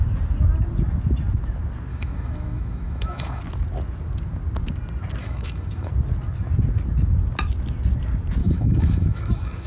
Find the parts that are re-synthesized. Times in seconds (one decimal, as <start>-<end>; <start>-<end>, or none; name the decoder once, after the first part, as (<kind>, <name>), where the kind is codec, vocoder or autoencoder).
1.9-3.4 (autoencoder, DAC-VAE); 5.2-5.9; 8.4-9.7